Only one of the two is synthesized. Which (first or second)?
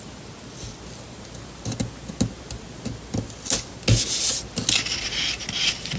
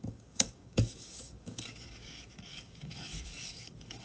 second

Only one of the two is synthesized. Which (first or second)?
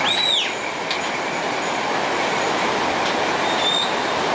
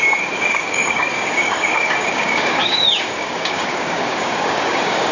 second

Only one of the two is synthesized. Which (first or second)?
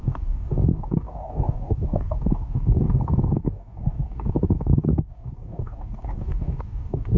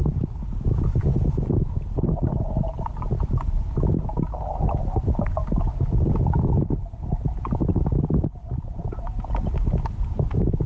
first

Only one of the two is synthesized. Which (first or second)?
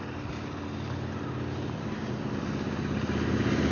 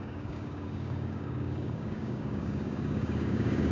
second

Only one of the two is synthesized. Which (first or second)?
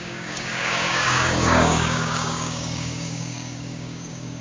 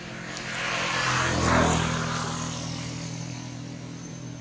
first